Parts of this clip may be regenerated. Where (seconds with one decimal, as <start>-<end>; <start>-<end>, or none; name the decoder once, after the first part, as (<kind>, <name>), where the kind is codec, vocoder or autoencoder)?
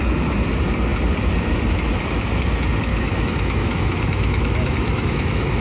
2.9-5.6 (autoencoder, DAC-VAE)